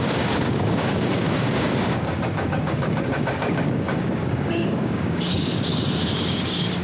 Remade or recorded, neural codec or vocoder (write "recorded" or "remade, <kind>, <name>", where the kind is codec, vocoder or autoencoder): remade, codec, DAC